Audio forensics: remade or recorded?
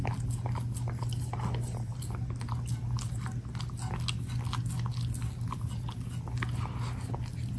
recorded